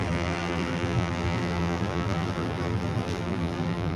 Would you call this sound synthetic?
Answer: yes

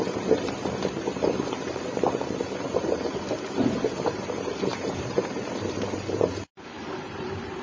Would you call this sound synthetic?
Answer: yes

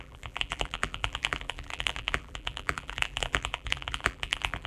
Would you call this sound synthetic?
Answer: yes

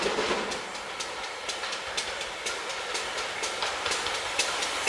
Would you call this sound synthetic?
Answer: no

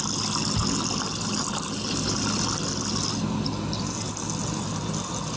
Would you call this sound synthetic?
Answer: no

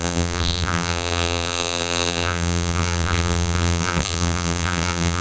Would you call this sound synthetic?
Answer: yes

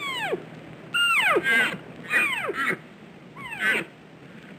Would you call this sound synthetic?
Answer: no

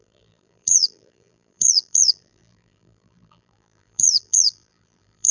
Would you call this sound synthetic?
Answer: yes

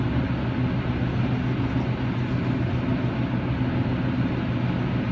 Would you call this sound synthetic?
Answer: no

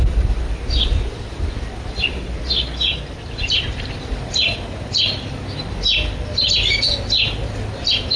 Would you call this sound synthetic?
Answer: no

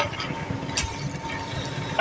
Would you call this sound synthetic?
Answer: no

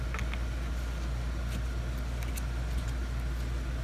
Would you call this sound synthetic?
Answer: no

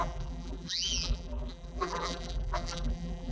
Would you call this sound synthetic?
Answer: yes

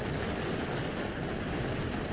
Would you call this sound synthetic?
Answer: no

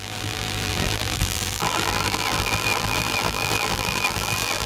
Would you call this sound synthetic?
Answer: yes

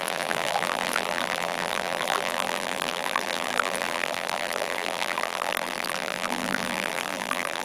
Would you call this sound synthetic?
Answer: yes